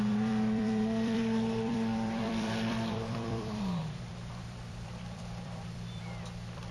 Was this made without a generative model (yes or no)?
no